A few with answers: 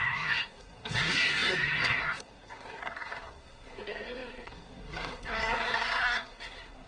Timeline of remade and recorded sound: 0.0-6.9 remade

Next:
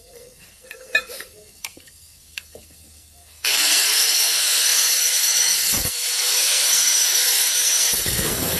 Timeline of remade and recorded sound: 0.0-8.6 remade

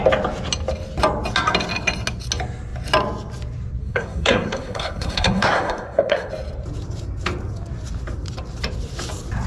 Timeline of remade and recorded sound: 0.0-3.8 recorded; 3.8-6.3 remade; 6.3-9.5 recorded

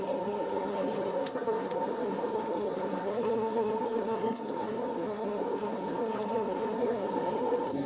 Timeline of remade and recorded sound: 0.0-7.9 remade

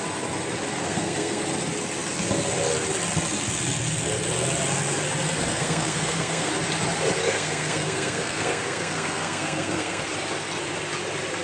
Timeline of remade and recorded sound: 0.0-0.8 recorded; 0.8-1.4 remade; 1.4-5.5 recorded; 5.5-6.5 remade; 6.5-7.2 recorded; 7.2-10.0 remade; 10.0-11.4 recorded

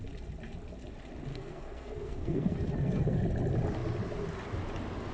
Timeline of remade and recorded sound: 0.0-1.3 recorded; 1.3-3.2 remade; 3.2-5.1 recorded

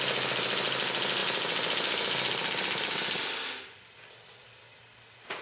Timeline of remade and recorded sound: 0.0-5.4 recorded